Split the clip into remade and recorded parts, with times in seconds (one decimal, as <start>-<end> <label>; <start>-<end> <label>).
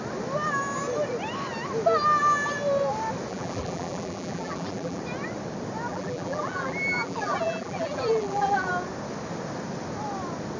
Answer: 0.0-3.3 recorded; 3.3-5.0 remade; 5.0-5.9 recorded; 5.9-8.7 remade; 8.7-10.6 recorded